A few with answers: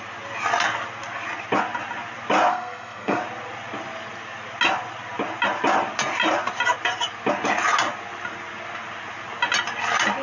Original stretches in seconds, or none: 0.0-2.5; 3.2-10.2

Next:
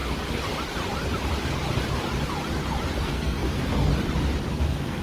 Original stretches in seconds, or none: 0.0-3.0; 3.9-4.5

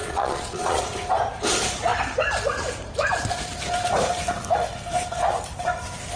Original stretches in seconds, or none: 0.8-6.2

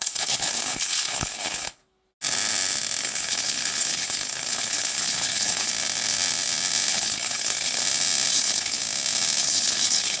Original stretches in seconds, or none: 1.8-3.0; 5.7-6.9; 7.8-8.3; 8.8-9.4

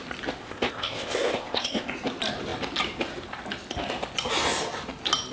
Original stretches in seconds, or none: 0.0-0.4; 1.9-5.3